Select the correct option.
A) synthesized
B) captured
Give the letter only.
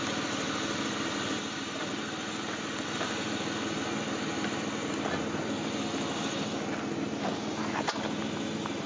B